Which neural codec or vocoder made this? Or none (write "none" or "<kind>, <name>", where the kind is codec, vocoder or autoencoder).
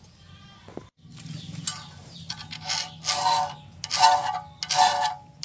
none